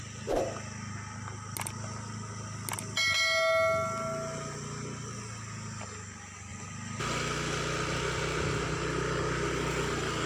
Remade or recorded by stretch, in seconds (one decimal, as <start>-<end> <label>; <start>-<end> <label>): 0.0-10.3 recorded